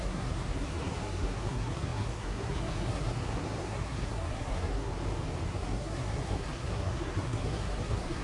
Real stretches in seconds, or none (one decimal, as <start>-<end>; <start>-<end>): 4.9-5.5